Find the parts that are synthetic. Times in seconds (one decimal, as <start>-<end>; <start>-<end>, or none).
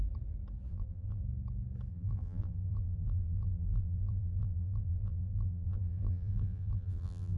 0.7-1.2; 1.9-7.4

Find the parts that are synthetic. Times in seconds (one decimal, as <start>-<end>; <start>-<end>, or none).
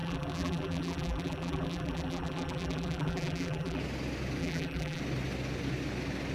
0.0-3.8; 4.4-5.0